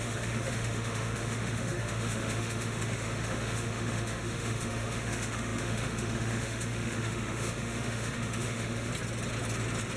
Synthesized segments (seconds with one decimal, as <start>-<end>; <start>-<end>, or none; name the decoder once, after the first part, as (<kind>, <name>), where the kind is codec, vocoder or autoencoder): 0.0-8.9 (autoencoder, DAC-VAE)